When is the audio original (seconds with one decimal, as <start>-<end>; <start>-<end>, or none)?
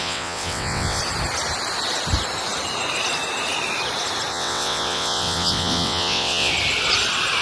1.0-4.3; 6.5-7.4